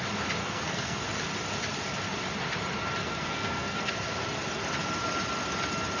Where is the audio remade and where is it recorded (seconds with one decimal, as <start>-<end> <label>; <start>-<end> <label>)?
0.0-0.4 recorded; 0.4-1.0 remade; 1.0-3.0 recorded; 3.0-3.9 remade; 3.9-6.0 recorded